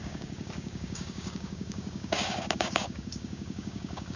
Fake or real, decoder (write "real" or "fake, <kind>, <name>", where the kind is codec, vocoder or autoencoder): fake, codec, DAC